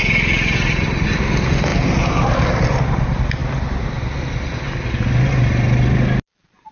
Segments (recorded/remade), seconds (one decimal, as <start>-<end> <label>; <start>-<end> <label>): 0.0-6.7 recorded